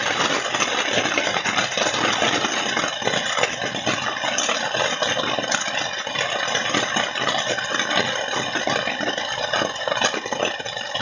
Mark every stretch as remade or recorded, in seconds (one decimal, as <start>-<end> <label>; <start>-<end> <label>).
0.0-11.0 recorded